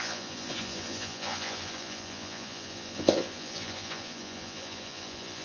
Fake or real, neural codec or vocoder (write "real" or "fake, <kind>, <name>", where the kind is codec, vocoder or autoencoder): fake, vocoder, Vocos